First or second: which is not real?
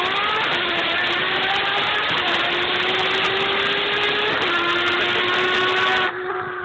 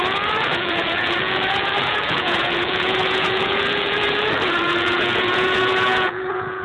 second